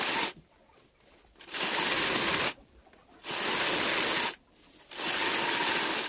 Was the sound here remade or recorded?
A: recorded